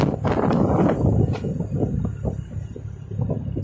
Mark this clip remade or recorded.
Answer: recorded